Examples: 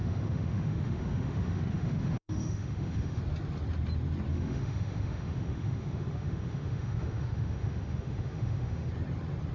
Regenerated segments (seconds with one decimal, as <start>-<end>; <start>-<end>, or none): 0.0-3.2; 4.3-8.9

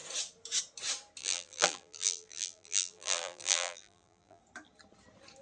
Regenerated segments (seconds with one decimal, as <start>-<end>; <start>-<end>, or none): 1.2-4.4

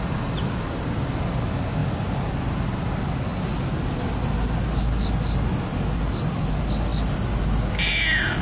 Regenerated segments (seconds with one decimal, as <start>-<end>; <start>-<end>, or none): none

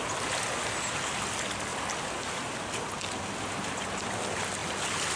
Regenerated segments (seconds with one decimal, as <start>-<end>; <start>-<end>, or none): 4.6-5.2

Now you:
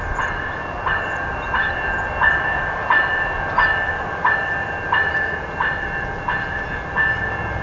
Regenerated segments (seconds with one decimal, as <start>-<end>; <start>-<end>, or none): none